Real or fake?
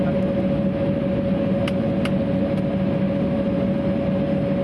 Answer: real